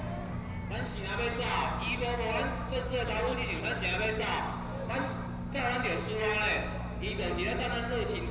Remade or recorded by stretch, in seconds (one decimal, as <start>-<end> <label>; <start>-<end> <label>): 0.0-8.3 recorded